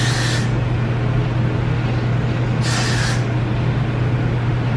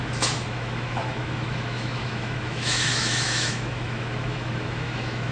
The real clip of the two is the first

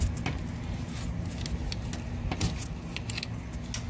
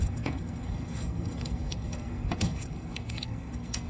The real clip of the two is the first